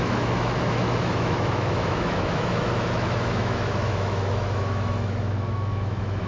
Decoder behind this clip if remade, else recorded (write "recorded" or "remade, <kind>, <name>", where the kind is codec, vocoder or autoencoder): remade, autoencoder, DAC-VAE